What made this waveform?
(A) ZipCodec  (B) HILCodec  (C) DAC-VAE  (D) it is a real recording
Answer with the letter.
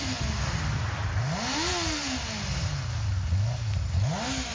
D